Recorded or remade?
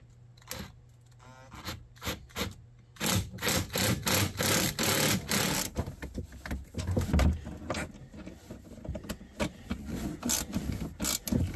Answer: recorded